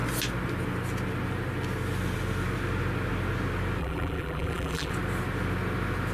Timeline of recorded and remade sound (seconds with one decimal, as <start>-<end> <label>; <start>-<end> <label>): 0.0-3.8 recorded; 3.8-4.9 remade; 4.9-6.1 recorded